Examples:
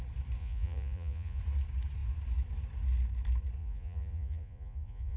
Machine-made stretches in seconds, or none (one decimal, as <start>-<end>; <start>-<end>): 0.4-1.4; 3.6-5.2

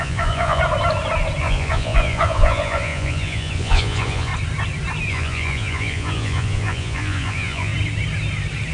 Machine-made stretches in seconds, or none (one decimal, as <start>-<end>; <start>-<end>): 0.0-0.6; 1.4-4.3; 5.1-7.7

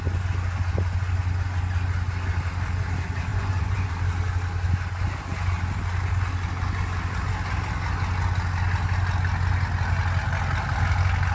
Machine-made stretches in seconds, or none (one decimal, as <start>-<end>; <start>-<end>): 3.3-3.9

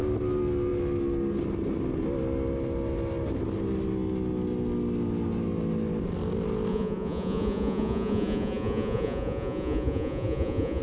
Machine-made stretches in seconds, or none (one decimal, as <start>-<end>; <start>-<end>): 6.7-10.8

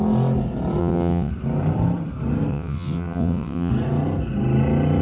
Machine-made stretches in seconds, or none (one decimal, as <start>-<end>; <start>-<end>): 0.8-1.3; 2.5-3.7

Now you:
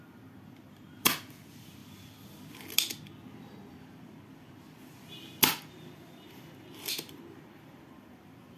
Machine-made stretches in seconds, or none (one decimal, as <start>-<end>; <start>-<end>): 0.0-1.8; 6.9-8.6